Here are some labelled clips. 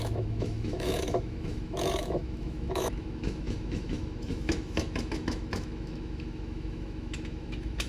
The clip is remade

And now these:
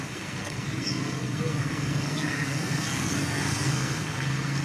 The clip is remade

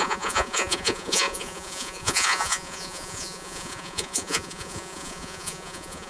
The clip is remade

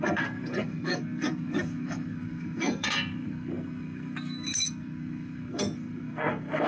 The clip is remade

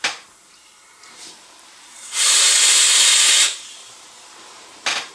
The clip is remade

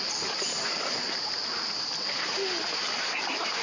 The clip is recorded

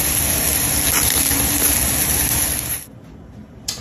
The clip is recorded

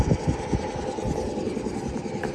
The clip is recorded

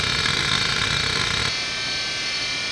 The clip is recorded